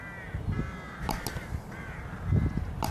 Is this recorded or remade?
recorded